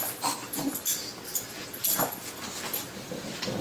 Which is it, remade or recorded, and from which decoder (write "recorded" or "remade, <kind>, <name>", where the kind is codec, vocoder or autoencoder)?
recorded